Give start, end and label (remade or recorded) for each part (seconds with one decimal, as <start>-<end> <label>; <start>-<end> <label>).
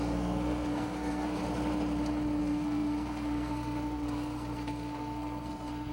0.0-1.4 remade; 1.4-2.4 recorded; 2.4-5.9 remade